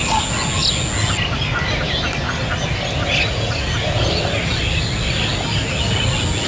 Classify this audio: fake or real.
real